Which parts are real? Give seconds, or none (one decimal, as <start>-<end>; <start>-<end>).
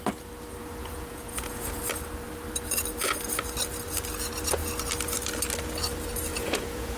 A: 0.0-0.8; 1.8-6.3